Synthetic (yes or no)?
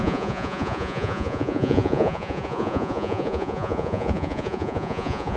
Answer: yes